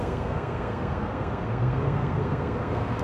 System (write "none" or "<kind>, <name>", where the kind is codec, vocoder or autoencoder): codec, SNAC